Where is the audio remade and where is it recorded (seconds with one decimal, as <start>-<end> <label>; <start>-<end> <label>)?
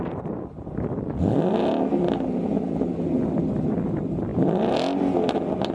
0.0-5.7 recorded